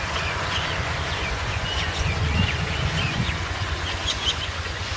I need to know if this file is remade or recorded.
remade